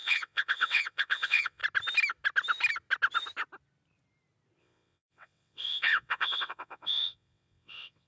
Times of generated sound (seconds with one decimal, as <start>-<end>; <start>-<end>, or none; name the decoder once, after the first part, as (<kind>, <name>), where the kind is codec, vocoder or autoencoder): 0.0-1.6 (vocoder, WaveNeXt); 4.6-8.1